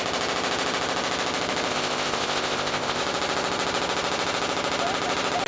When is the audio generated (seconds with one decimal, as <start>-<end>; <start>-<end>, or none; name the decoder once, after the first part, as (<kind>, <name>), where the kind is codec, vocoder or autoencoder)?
1.7-3.0 (codec, ZipCodec)